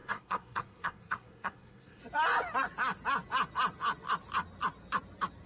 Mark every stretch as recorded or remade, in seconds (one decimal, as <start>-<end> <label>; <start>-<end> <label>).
0.0-2.0 remade; 2.0-5.5 recorded